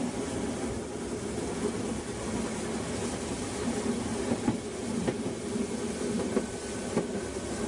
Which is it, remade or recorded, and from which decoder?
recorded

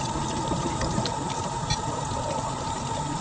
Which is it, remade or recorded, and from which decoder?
remade, vocoder, BigVGAN v2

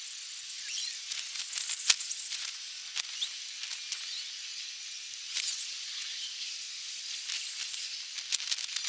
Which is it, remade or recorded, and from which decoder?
recorded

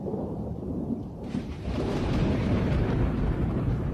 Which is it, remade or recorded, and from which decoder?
remade, vocoder, BigVGAN v2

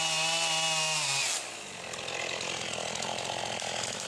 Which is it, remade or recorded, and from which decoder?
recorded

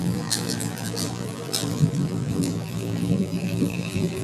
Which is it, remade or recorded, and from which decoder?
remade, vocoder, BigVGAN v2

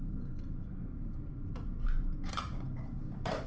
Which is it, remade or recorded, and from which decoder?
remade, vocoder, BigVGAN v2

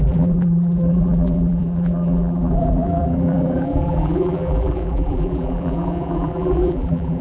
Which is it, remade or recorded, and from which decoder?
remade, vocoder, BigVGAN v2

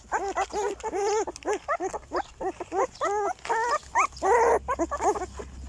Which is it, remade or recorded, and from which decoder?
recorded